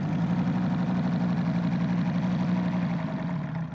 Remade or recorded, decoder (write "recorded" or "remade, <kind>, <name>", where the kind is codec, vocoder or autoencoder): recorded